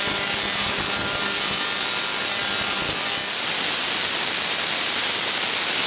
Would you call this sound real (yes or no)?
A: yes